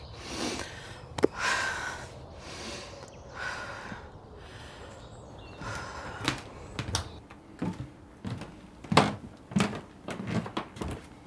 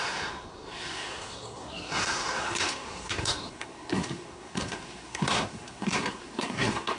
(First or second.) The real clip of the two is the first